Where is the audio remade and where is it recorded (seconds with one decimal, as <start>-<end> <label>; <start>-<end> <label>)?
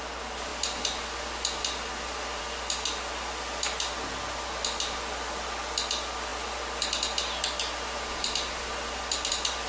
0.0-9.7 recorded